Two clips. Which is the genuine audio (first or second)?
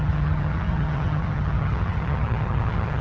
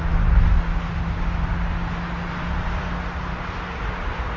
second